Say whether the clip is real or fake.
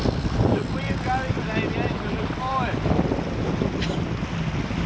real